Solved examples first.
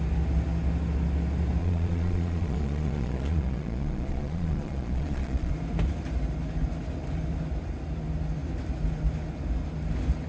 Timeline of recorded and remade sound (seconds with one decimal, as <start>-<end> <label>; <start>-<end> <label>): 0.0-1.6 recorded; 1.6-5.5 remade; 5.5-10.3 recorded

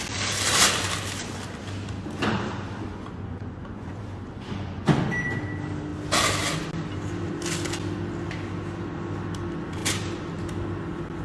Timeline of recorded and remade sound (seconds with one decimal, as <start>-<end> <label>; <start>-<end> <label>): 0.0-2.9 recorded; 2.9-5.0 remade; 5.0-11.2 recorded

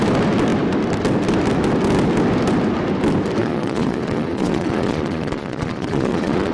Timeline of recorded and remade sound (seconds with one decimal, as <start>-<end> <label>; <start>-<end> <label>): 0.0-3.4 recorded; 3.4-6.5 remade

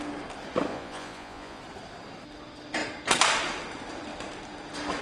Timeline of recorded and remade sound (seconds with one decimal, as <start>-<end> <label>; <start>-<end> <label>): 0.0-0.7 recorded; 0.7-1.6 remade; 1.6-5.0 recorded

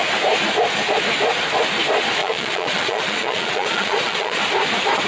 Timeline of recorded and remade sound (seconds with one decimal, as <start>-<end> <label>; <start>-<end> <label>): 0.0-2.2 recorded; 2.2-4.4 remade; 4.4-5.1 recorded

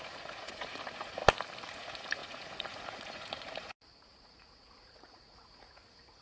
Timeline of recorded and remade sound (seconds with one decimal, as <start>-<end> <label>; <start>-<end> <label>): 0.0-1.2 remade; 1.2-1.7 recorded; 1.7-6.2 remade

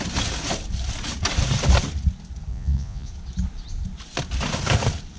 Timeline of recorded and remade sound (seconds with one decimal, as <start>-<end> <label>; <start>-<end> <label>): 0.0-2.5 recorded; 2.5-3.1 remade; 3.1-5.2 recorded